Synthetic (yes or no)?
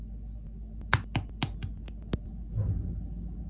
no